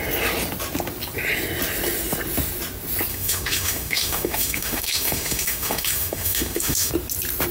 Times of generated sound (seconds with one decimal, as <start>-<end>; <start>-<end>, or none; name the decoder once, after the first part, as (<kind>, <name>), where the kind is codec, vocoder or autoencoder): 3.1-6.9 (autoencoder, DAC-VAE)